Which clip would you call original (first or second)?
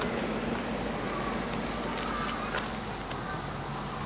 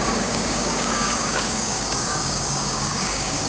first